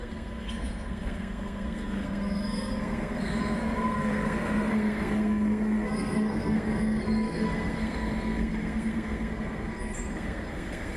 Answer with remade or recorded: remade